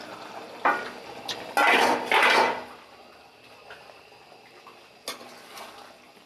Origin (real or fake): real